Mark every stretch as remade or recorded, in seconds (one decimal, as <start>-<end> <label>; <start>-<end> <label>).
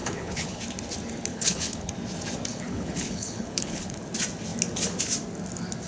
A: 0.0-0.6 remade; 0.6-1.3 recorded; 1.3-1.9 remade; 1.9-2.5 recorded; 2.5-4.0 remade; 4.0-5.9 recorded